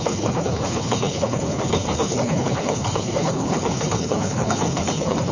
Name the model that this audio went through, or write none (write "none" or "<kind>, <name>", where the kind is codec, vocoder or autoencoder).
codec, HILCodec